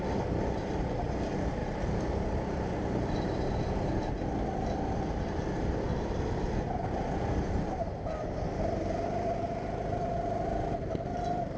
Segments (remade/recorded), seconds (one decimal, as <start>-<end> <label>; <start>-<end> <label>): 0.0-1.6 recorded; 1.6-4.1 remade; 4.1-11.6 recorded